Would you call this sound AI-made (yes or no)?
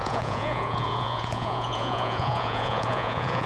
yes